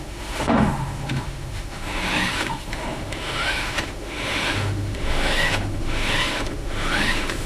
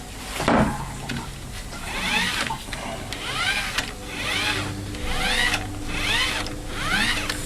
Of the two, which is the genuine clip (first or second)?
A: second